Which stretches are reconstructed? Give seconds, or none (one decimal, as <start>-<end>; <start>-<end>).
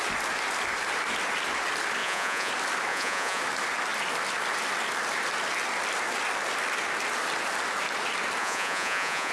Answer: 2.0-2.5; 2.9-3.4; 8.4-9.3